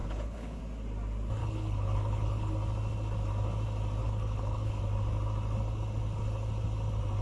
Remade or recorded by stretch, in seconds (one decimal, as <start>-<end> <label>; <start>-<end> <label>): 0.0-0.6 remade; 0.6-1.4 recorded; 1.4-2.5 remade; 2.5-4.0 recorded; 4.0-4.8 remade; 4.8-7.2 recorded